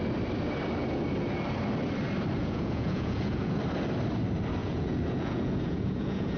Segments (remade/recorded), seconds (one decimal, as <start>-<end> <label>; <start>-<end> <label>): 0.0-2.4 recorded; 2.4-3.6 remade; 3.6-4.6 recorded; 4.6-6.4 remade